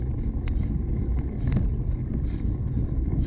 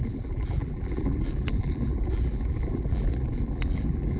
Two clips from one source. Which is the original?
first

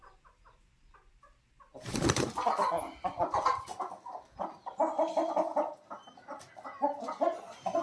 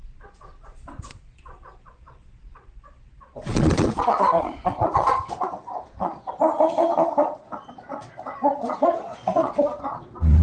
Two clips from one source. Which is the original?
first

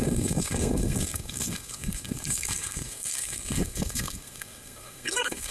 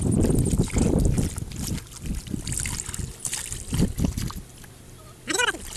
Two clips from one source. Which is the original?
second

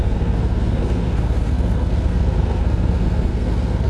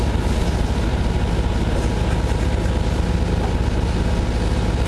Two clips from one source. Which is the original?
second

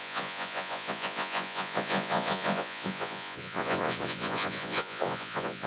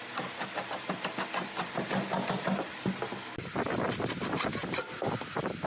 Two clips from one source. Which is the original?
second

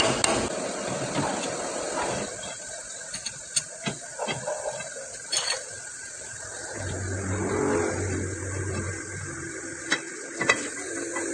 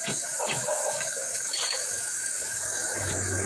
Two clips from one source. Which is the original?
first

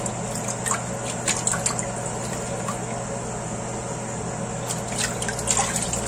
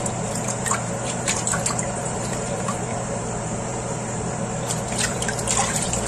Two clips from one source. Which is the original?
first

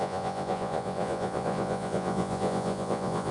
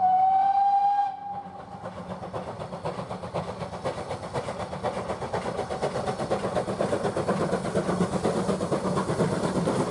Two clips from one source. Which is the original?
second